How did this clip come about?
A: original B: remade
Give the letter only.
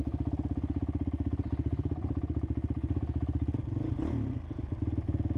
A